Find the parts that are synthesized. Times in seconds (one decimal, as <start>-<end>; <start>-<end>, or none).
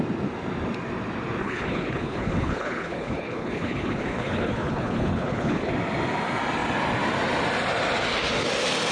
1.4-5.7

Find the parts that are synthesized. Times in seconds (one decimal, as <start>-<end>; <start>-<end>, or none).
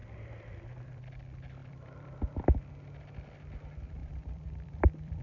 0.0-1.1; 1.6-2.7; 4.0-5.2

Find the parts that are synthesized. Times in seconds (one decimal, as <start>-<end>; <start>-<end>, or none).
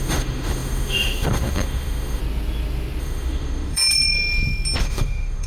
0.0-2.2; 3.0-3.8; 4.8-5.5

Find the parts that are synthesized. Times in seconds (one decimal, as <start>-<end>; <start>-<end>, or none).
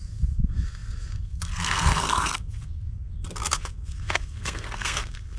0.0-5.4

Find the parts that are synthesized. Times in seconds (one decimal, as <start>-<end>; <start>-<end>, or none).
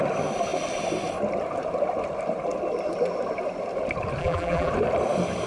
4.2-4.7